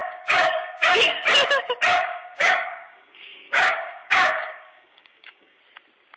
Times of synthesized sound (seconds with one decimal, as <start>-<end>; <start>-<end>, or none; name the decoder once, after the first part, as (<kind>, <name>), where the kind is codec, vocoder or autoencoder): 0.0-1.0 (codec, DAC); 1.9-5.6